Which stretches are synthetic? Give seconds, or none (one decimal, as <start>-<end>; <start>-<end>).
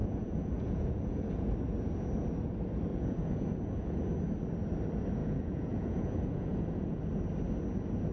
0.0-1.5; 2.9-4.1; 5.2-7.0